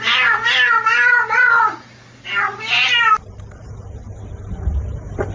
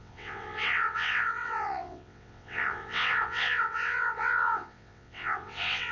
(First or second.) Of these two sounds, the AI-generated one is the second